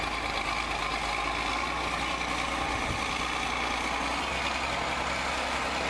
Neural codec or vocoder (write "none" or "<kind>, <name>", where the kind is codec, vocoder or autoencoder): none